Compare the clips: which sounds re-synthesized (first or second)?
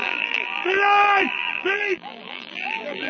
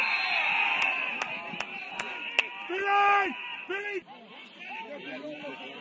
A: first